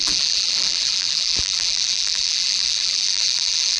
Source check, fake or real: fake